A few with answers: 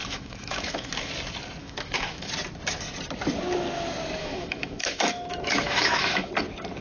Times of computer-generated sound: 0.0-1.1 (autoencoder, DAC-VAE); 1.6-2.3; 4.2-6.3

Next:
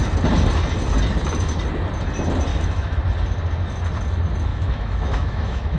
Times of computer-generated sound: 2.5-3.0 (autoencoder, DAC-VAE); 4.5-5.8

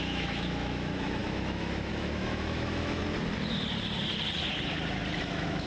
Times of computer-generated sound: 0.0-3.0 (autoencoder, DAC-VAE); 5.2-5.7

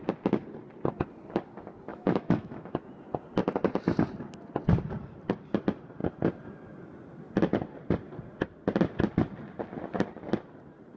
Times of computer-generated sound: 1.9-2.9 (autoencoder, DAC-VAE)

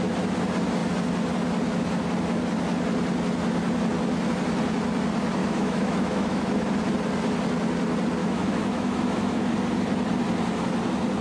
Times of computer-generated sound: 5.4-6.4 (autoencoder, DAC-VAE); 8.2-9.5

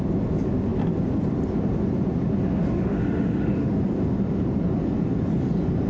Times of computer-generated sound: 2.6-3.7 (autoencoder, DAC-VAE)

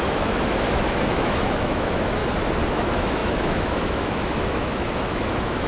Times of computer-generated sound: 0.0-2.2 (autoencoder, DAC-VAE); 2.7-5.7

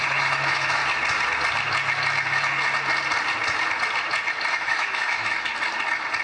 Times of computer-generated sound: 0.0-0.8 (autoencoder, DAC-VAE); 4.5-5.5